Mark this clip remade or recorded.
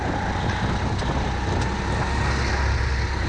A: recorded